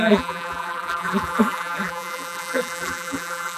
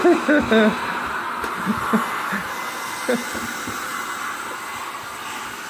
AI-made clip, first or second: first